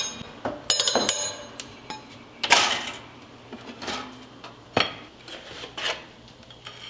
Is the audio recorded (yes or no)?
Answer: yes